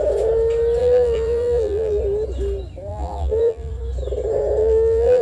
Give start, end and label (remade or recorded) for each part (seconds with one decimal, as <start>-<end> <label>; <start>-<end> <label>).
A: 0.0-0.8 recorded; 0.8-2.0 remade; 2.0-2.9 recorded; 2.9-3.7 remade; 3.7-4.6 recorded; 4.6-5.2 remade